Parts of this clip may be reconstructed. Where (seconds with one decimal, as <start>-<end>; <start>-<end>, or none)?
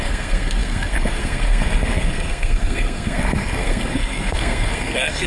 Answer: 0.0-5.3